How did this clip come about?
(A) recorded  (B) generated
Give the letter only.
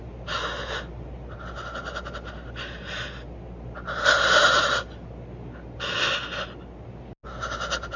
A